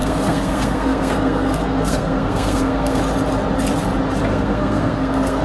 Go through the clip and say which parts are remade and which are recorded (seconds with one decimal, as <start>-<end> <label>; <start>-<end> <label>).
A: 0.0-3.0 remade; 3.0-4.3 recorded; 4.3-5.4 remade

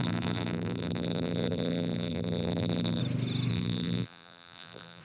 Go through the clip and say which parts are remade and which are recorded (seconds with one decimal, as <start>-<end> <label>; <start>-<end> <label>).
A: 0.0-3.0 remade; 3.0-3.5 recorded; 3.5-5.0 remade

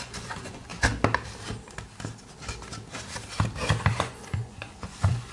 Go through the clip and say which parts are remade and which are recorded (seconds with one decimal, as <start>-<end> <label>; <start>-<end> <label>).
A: 0.0-0.7 remade; 0.7-3.9 recorded; 3.9-5.3 remade

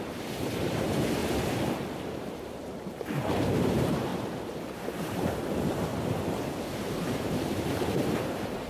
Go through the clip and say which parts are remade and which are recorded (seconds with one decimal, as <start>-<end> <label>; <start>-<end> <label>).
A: 0.0-1.2 remade; 1.2-2.1 recorded; 2.1-4.1 remade; 4.1-4.6 recorded; 4.6-5.9 remade; 5.9-6.7 recorded; 6.7-8.7 remade

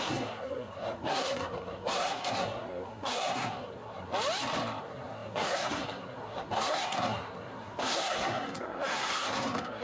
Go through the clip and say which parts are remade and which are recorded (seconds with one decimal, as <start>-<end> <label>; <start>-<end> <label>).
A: 0.0-4.1 remade; 4.1-4.8 recorded; 4.8-9.8 remade

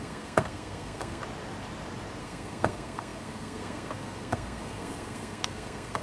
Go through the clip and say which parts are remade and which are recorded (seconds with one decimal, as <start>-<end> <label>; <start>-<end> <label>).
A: 0.0-1.2 remade; 1.2-2.2 recorded; 2.2-6.0 remade

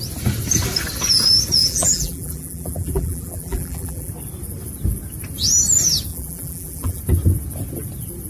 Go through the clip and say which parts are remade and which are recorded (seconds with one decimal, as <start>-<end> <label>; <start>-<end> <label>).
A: 0.0-1.6 recorded; 1.6-4.1 remade; 4.1-6.1 recorded; 6.1-7.0 remade; 7.0-8.3 recorded

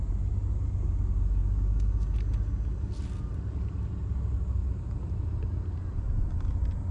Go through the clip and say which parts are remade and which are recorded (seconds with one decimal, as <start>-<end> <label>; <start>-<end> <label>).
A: 0.0-4.6 recorded; 4.6-6.3 remade; 6.3-6.9 recorded